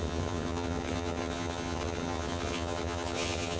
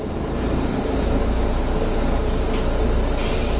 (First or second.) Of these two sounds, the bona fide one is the second